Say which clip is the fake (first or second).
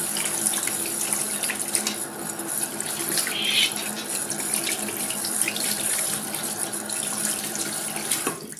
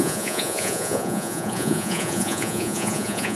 second